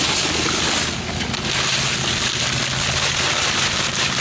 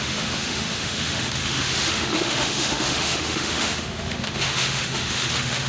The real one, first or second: first